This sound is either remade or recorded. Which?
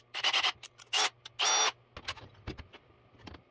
recorded